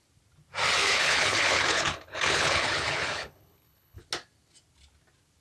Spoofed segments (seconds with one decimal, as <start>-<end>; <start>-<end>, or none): 0.8-4.0